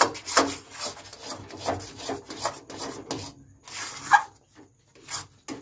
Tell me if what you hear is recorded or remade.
recorded